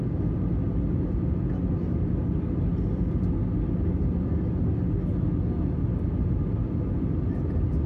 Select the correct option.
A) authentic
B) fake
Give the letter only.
A